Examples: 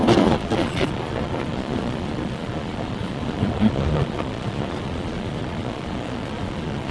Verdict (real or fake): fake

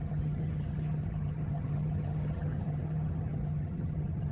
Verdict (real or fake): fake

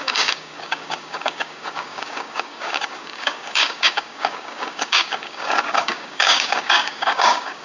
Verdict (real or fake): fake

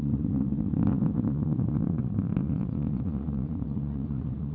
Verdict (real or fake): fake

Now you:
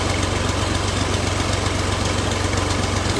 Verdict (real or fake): real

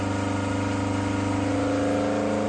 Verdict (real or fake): real